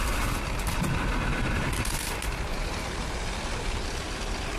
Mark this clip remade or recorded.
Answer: remade